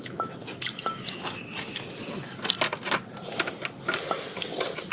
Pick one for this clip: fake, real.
real